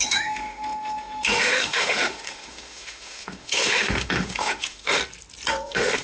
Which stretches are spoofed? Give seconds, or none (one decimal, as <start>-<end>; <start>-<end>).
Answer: 0.0-5.0; 5.5-6.0